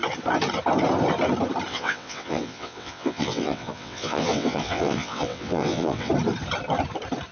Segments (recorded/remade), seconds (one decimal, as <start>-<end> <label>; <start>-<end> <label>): 0.0-1.7 recorded; 1.7-6.1 remade; 6.1-7.3 recorded